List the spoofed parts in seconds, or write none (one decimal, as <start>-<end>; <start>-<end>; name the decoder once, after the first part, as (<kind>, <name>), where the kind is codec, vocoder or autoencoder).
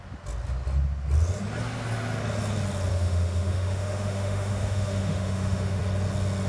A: 2.9-5.8 (autoencoder, DAC-VAE)